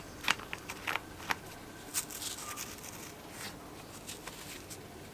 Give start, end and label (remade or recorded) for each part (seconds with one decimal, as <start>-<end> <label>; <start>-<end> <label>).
0.0-5.1 recorded